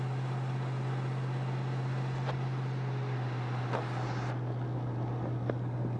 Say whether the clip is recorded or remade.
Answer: recorded